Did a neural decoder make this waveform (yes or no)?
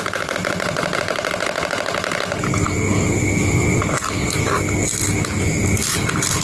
no